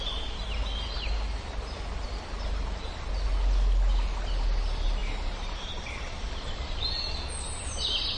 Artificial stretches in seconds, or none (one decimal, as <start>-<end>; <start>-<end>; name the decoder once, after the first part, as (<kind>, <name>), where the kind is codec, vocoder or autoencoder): none